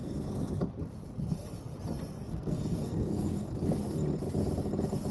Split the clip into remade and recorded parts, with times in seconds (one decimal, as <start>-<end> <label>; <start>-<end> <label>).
0.0-0.6 remade; 0.6-2.2 recorded; 2.2-3.5 remade; 3.5-5.1 recorded